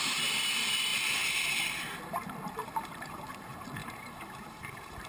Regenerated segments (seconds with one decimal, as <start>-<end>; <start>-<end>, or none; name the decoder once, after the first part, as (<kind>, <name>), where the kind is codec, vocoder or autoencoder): 2.6-3.2 (vocoder, BigVGAN v2); 3.8-5.1